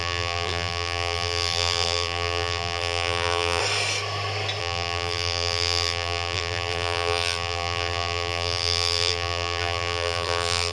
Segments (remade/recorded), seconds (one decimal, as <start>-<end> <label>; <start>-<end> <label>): 0.0-3.6 remade; 3.6-4.6 recorded; 4.6-10.7 remade